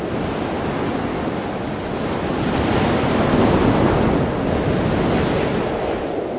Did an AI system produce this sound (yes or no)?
no